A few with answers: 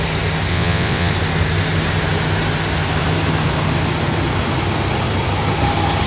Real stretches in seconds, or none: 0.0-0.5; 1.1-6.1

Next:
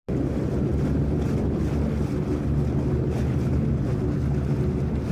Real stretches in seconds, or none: 0.0-5.1

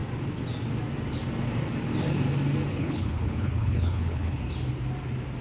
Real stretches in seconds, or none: 0.0-2.7; 4.4-5.4

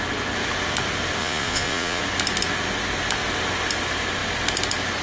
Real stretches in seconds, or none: 0.0-1.2; 2.0-5.0

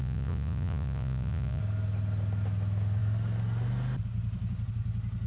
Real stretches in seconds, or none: 1.6-5.3